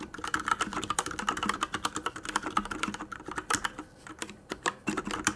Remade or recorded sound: remade